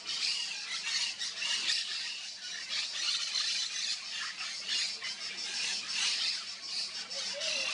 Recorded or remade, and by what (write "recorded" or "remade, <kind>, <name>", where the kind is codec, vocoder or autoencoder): recorded